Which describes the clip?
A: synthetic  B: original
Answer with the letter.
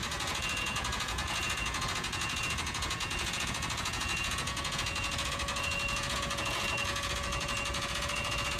A